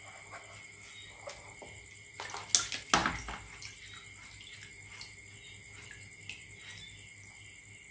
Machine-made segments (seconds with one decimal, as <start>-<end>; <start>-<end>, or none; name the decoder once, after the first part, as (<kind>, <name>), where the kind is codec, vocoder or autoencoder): none